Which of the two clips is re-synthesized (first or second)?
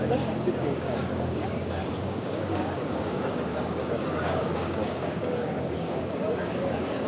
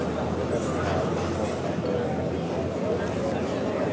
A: first